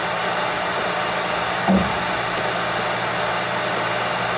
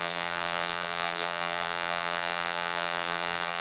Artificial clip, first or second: second